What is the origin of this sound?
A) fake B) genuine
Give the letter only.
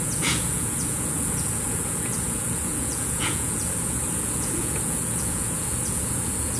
A